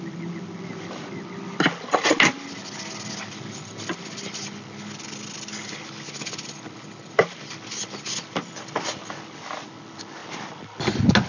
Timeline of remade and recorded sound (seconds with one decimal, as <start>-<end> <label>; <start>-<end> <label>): 0.0-11.3 recorded